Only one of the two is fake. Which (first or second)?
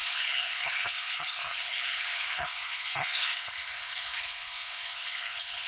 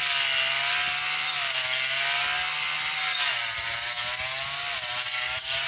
first